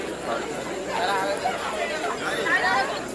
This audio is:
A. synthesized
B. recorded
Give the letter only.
B